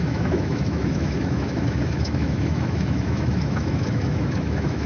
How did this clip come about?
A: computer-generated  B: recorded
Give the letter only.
A